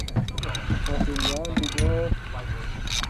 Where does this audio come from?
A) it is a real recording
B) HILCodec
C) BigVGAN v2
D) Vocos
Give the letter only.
A